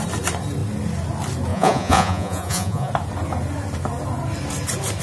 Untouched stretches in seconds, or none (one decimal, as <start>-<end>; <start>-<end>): 0.0-1.5; 2.9-5.0